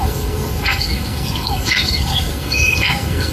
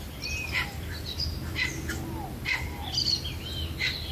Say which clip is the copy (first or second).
first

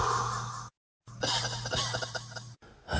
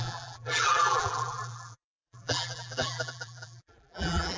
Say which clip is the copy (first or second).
second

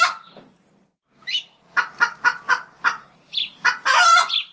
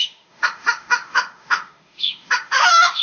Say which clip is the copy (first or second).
second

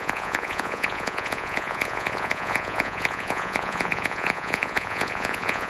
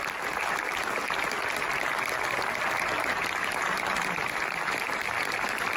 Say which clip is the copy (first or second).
first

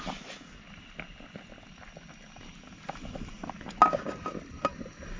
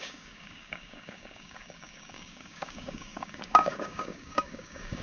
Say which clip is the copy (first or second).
second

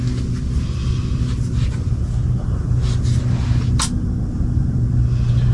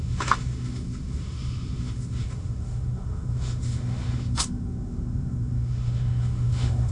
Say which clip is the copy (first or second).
second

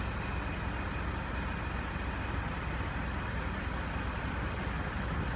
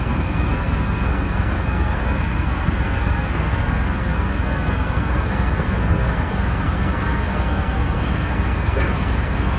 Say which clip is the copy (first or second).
second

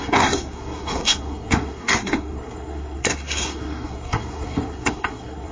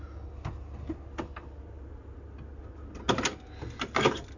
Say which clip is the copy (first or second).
first